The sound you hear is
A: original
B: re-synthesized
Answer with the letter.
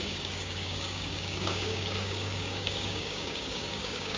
B